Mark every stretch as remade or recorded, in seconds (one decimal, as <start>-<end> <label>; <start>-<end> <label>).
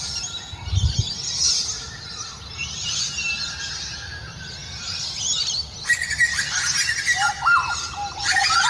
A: 0.0-8.7 recorded